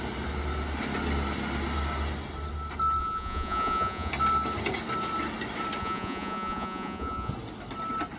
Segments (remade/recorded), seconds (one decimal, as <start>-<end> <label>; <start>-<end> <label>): 0.0-3.0 recorded; 3.0-4.1 remade; 4.1-5.8 recorded; 5.8-7.3 remade; 7.3-8.2 recorded